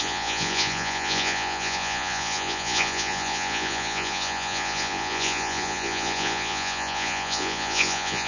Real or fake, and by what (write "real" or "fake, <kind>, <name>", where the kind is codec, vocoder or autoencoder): fake, vocoder, Vocos